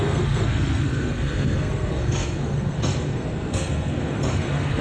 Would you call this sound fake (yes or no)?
yes